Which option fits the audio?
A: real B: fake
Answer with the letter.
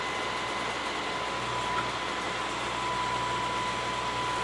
A